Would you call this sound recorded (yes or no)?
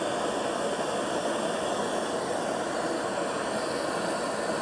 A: yes